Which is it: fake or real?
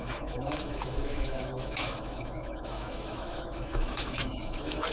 fake